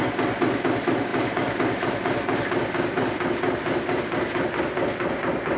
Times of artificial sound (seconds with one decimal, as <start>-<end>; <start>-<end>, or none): none